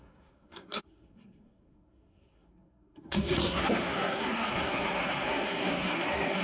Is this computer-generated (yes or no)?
yes